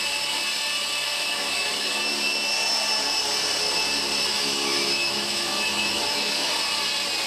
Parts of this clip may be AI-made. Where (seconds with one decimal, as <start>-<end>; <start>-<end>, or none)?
1.1-2.0; 4.3-6.5